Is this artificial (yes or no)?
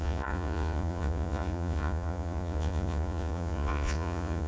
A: yes